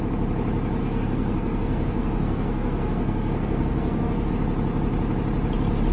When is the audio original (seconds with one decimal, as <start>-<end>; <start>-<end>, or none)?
0.0-0.8; 4.3-5.9